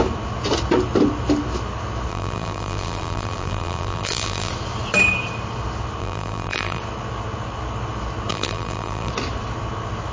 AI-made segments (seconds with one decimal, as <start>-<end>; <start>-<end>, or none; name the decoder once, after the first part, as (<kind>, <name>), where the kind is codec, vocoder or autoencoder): 2.1-4.5 (vocoder, BigVGAN v2); 6.0-6.8; 8.3-9.1